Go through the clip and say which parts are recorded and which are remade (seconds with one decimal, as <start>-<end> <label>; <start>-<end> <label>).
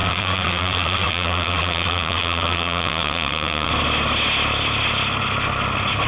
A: 0.0-3.7 remade; 3.7-6.1 recorded